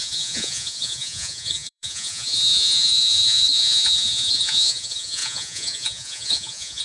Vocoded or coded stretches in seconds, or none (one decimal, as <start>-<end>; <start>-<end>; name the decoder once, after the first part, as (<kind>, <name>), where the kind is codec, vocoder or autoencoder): 0.0-6.8 (vocoder, Vocos)